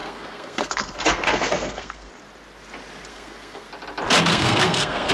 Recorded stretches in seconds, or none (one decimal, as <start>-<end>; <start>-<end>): 2.1-3.1; 3.7-4.3